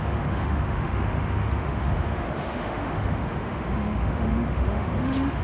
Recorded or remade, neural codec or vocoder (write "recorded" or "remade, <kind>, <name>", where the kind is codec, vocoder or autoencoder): remade, autoencoder, DAC-VAE